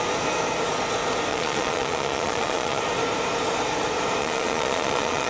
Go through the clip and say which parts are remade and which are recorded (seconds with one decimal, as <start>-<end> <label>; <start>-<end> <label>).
0.0-1.3 recorded; 1.3-2.8 remade; 2.8-4.2 recorded; 4.2-5.3 remade